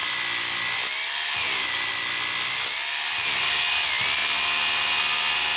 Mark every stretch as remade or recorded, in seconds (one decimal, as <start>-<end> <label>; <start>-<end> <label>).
0.0-5.6 recorded